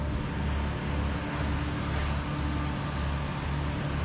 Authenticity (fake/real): real